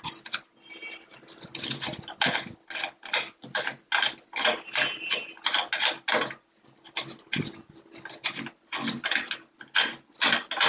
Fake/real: real